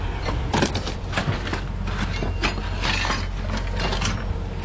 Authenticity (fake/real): real